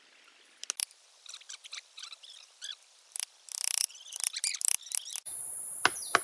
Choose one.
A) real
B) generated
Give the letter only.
A